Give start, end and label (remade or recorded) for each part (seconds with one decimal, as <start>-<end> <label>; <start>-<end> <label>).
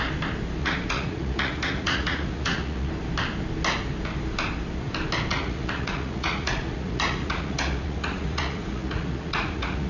0.0-0.6 recorded; 0.6-2.9 remade; 2.9-5.3 recorded; 5.3-9.9 remade